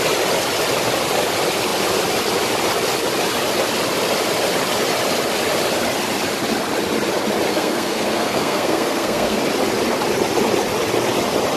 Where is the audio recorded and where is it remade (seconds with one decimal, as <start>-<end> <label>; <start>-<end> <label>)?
0.0-7.5 recorded; 7.5-9.4 remade; 9.4-11.6 recorded